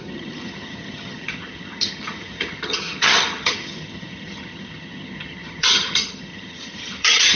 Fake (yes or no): yes